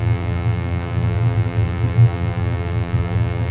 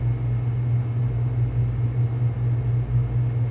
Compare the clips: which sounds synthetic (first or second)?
first